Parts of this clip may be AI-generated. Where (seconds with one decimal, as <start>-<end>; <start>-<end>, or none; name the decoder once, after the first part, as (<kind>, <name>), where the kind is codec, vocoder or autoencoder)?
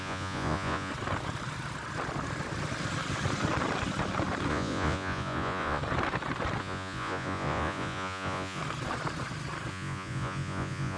0.0-0.9 (vocoder, Vocos); 4.5-5.8; 6.6-8.6; 9.7-11.0